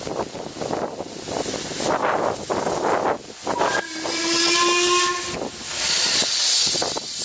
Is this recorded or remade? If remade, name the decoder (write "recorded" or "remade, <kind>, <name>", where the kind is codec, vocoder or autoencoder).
recorded